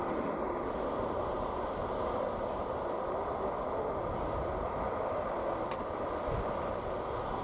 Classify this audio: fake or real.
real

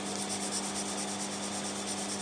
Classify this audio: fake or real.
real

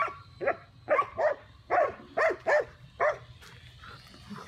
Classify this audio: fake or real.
real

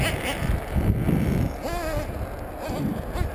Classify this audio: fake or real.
real